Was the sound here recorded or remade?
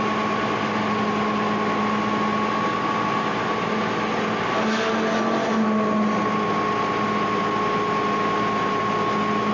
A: recorded